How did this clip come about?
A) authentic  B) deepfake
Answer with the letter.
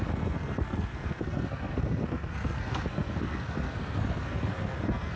B